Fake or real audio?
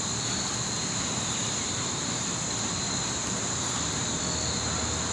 real